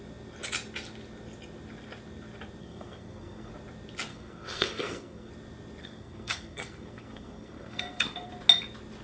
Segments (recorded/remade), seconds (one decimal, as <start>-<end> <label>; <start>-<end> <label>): 0.0-2.6 recorded; 2.6-3.5 remade; 3.5-4.1 recorded; 4.1-5.3 remade; 5.3-5.8 recorded; 5.8-8.3 remade; 8.3-9.0 recorded